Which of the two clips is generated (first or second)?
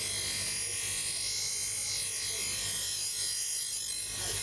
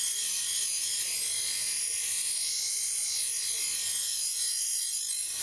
second